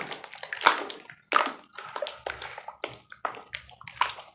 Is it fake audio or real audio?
real